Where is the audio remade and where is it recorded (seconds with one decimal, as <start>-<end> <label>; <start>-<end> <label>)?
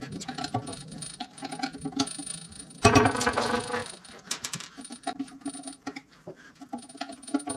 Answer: 0.0-0.7 recorded; 0.7-1.4 remade; 1.4-3.8 recorded; 3.8-6.5 remade; 6.5-7.6 recorded